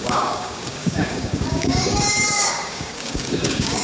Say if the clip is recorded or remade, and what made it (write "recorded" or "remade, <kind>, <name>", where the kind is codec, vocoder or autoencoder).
remade, codec, DAC